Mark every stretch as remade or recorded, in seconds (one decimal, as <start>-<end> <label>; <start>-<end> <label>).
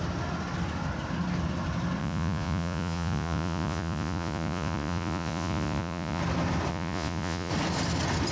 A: 0.0-2.0 recorded; 2.0-6.2 remade; 6.2-6.7 recorded; 6.7-7.5 remade; 7.5-8.3 recorded